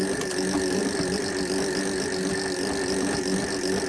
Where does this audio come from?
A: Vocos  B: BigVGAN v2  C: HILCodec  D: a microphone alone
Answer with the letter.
D